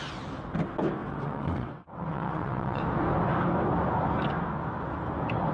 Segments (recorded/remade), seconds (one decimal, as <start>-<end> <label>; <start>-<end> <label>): 0.0-1.0 recorded; 1.0-2.8 remade; 2.8-5.5 recorded